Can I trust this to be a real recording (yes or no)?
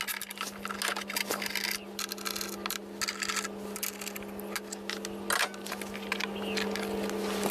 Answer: yes